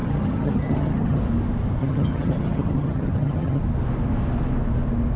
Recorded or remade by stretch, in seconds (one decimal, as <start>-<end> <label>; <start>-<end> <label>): 0.0-1.2 remade; 1.2-1.8 recorded; 1.8-3.6 remade; 3.6-5.2 recorded